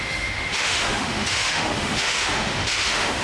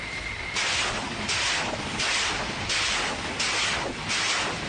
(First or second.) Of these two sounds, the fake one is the first